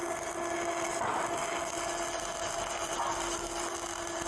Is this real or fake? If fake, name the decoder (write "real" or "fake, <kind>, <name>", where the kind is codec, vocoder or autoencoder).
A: real